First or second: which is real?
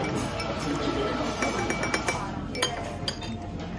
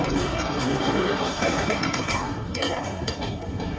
first